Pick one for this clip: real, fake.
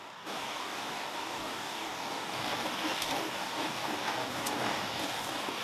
fake